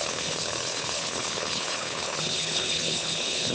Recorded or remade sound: remade